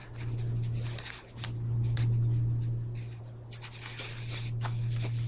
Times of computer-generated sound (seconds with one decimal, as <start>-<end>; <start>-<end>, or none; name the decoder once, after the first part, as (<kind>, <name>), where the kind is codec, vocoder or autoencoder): none